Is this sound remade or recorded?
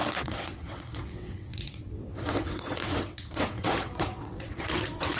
remade